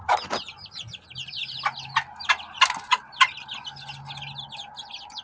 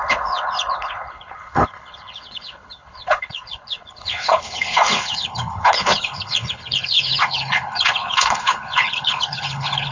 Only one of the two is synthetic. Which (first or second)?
second